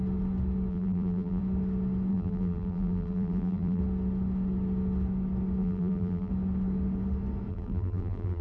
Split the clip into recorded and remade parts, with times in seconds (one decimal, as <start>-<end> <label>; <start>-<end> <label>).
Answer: 0.0-0.7 recorded; 0.7-1.4 remade; 1.4-2.1 recorded; 2.1-3.8 remade; 3.8-5.6 recorded; 5.6-6.3 remade; 6.3-7.5 recorded; 7.5-8.4 remade